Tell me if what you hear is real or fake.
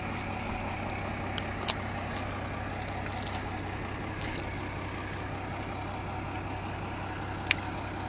real